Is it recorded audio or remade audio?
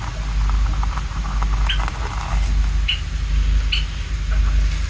recorded